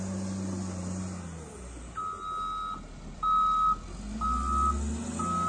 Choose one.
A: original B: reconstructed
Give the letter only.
A